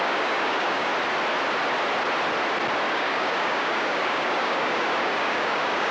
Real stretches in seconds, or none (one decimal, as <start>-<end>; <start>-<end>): 0.9-2.9